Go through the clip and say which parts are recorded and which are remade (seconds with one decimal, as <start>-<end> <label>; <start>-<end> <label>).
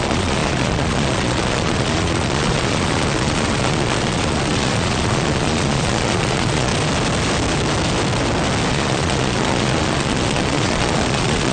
0.0-6.7 remade; 6.7-8.7 recorded; 8.7-11.5 remade